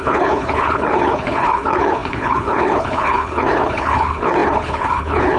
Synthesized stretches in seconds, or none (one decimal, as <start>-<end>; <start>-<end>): 0.0-5.4